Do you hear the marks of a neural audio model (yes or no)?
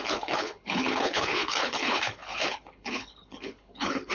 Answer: yes